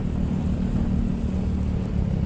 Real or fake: real